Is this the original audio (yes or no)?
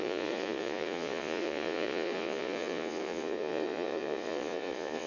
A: no